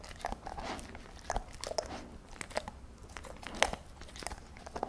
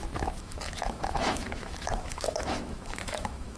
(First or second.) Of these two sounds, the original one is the first